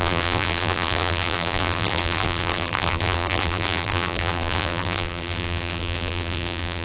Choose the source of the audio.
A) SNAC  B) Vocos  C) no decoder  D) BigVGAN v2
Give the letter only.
D